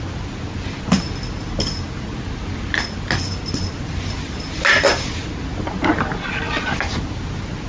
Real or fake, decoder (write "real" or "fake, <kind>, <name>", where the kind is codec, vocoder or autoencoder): real